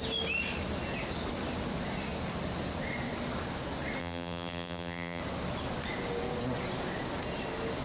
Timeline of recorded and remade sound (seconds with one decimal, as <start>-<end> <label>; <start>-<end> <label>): 0.0-4.0 recorded; 4.0-5.2 remade; 5.2-7.8 recorded